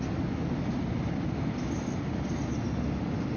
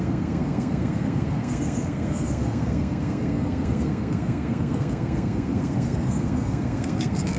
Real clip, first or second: first